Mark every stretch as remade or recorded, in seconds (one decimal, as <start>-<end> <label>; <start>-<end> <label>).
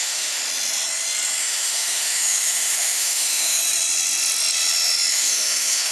0.0-0.4 remade; 0.4-1.4 recorded; 1.4-3.6 remade; 3.6-5.1 recorded; 5.1-5.9 remade